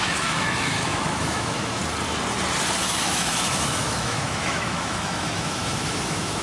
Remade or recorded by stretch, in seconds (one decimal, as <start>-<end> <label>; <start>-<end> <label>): 0.0-1.8 remade; 1.8-2.8 recorded; 2.8-6.4 remade